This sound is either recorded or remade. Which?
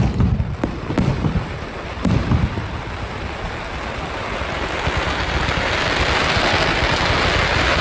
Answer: recorded